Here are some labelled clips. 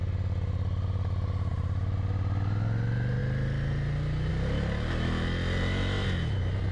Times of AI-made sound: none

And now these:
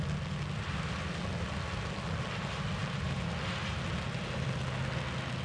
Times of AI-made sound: none

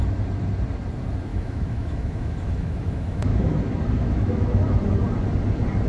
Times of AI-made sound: 1.3-4.8 (autoencoder, DAC-VAE)

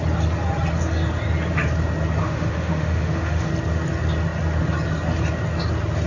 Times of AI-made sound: 2.2-3.5 (autoencoder, DAC-VAE)

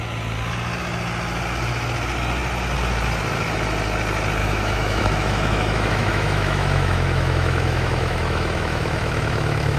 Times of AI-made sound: 4.4-9.8 (autoencoder, DAC-VAE)

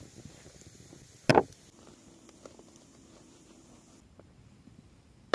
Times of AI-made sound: none